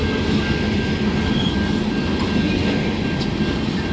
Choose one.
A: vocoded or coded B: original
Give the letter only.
B